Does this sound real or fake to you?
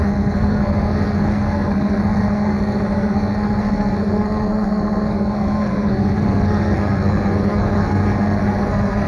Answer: fake